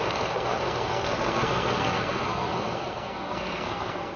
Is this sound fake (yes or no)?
yes